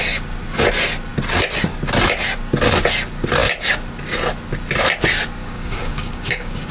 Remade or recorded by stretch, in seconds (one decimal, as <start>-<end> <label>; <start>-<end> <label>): 0.0-5.4 recorded; 5.4-6.7 remade